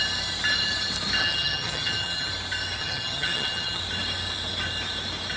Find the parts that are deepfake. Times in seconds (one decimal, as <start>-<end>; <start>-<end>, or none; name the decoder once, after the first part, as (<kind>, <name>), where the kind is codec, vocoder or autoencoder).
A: 1.2-2.3 (vocoder, HiFi-GAN); 2.8-3.8